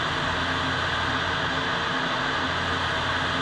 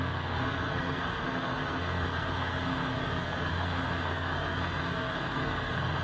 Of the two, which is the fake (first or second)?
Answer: second